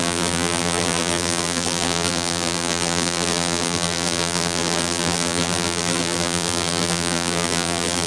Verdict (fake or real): fake